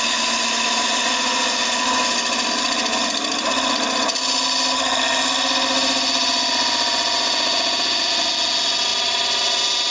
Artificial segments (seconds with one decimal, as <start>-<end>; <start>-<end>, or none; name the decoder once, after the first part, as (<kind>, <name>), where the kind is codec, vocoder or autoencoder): none